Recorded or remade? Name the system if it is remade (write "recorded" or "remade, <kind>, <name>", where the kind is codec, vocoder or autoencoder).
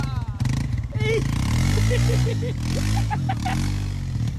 recorded